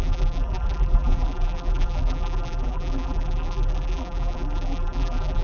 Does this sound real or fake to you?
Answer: fake